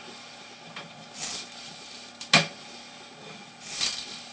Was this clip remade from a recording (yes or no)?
no